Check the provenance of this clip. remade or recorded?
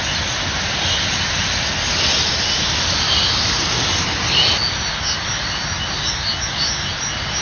recorded